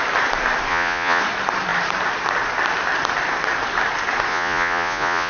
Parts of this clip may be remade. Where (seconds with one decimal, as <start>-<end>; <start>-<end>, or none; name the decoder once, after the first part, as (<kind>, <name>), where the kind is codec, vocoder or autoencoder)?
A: 0.7-1.2 (vocoder, Vocos); 4.3-5.3